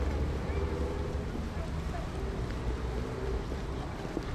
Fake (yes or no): no